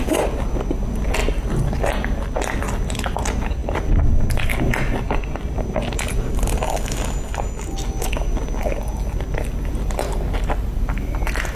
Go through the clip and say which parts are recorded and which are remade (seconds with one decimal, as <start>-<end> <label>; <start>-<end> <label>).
0.0-11.6 recorded